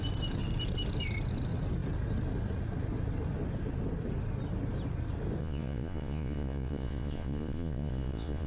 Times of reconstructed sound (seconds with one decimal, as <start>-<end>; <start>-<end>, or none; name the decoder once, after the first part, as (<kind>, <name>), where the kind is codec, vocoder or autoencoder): 5.4-8.5 (vocoder, Vocos)